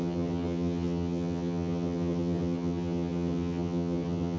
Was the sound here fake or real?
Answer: fake